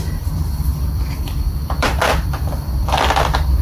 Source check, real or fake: fake